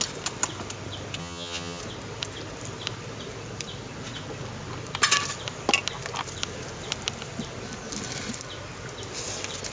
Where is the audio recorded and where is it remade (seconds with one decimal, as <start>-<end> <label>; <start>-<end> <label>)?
0.0-1.2 recorded; 1.2-1.8 remade; 1.8-9.7 recorded